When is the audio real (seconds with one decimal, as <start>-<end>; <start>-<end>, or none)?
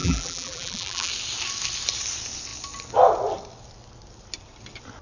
1.1-5.0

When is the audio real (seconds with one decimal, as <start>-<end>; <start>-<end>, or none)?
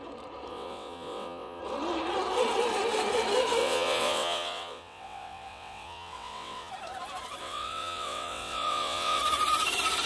0.0-0.5; 1.6-3.6; 6.7-7.4; 9.2-10.1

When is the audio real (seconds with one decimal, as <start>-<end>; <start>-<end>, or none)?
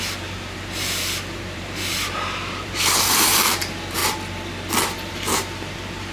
4.0-5.1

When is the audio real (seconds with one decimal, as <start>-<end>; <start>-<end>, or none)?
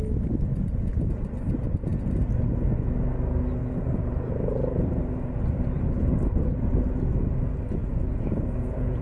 0.0-0.5; 1.1-3.6; 4.1-7.8